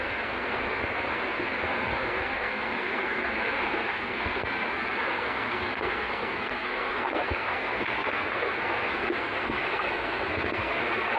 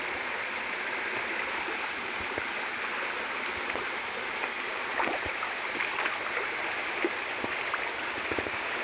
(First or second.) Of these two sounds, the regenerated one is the first